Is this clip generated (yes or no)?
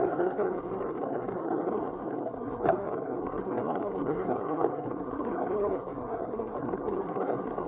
yes